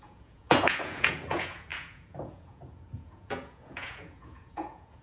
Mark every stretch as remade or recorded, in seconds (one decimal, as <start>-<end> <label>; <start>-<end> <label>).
0.0-5.0 remade